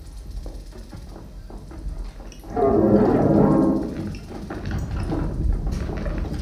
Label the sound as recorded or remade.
recorded